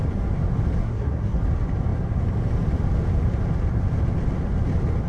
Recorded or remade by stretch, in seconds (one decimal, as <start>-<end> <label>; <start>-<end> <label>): 0.0-0.8 recorded; 0.8-1.4 remade; 1.4-5.1 recorded